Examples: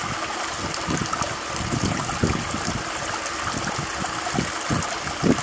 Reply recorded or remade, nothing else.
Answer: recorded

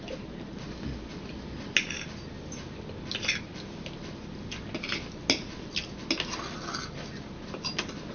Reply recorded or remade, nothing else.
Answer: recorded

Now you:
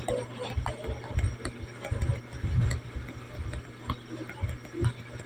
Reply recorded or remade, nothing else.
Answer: recorded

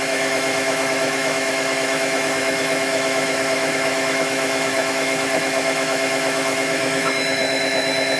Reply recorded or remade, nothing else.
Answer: remade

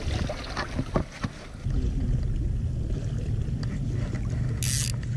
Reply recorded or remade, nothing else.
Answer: recorded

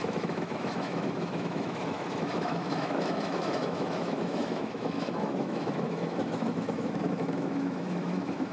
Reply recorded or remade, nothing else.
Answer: remade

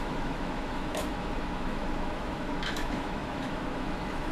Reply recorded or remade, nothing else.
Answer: remade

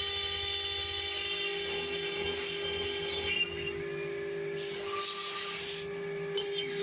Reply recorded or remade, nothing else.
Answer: recorded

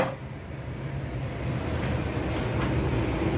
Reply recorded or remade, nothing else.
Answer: recorded